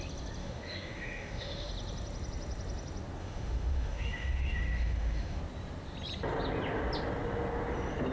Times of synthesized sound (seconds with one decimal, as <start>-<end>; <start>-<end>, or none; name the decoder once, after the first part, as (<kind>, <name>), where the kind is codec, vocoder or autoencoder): 0.4-1.7 (autoencoder, DAC-VAE); 3.2-5.4